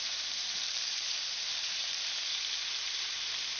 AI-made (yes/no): yes